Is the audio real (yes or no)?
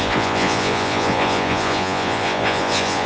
no